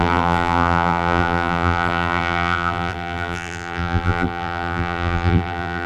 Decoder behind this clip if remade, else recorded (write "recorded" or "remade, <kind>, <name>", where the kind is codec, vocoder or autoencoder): remade, vocoder, BigVGAN v2